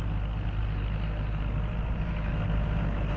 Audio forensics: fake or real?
real